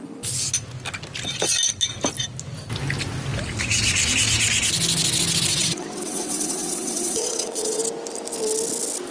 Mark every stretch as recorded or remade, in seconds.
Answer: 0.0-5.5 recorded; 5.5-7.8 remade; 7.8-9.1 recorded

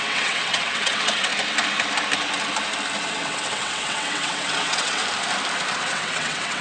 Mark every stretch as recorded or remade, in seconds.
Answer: 0.0-1.3 remade; 1.3-3.0 recorded; 3.0-5.0 remade; 5.0-5.8 recorded; 5.8-6.6 remade

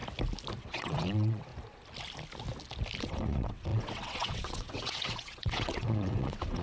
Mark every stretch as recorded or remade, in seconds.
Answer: 0.0-0.6 recorded; 0.6-1.5 remade; 1.5-3.0 recorded; 3.0-6.6 remade

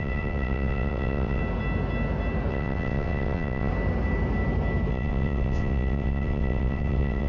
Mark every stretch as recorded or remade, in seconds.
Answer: 0.0-1.4 remade; 1.4-2.5 recorded; 2.5-3.7 remade; 3.7-4.9 recorded; 4.9-7.3 remade

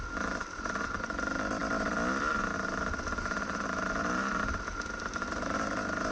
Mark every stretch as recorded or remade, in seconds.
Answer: 0.0-6.1 recorded

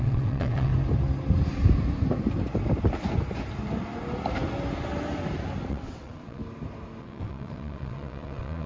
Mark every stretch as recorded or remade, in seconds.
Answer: 0.0-0.7 remade; 0.7-5.7 recorded; 5.7-6.4 remade; 6.4-7.0 recorded; 7.0-8.7 remade